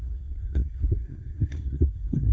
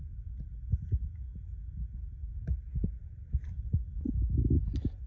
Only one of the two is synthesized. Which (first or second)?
first